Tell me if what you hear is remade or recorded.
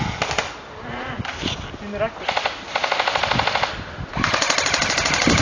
recorded